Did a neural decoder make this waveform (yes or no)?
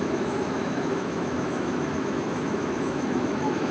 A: yes